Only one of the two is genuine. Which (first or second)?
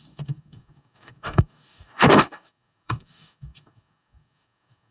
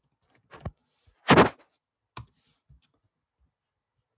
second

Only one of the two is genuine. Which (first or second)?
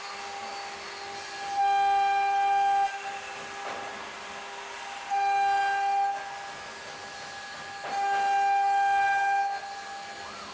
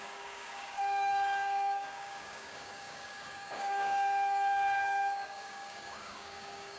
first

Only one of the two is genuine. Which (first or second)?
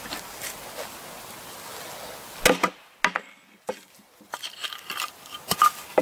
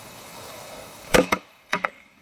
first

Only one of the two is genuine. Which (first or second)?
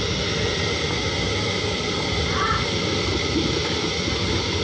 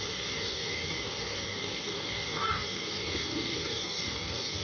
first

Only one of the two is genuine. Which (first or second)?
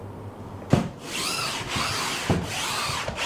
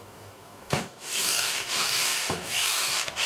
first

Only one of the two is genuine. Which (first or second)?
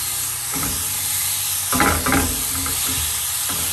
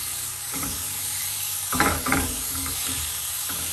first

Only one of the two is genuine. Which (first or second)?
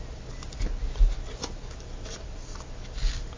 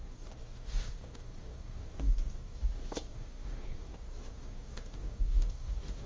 first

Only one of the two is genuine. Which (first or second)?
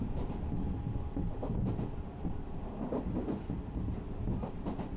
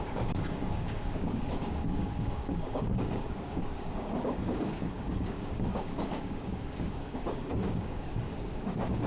first